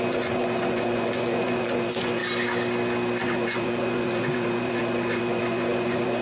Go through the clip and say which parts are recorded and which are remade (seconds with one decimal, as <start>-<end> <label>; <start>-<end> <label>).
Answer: 0.0-2.2 remade; 2.2-3.2 recorded; 3.2-6.2 remade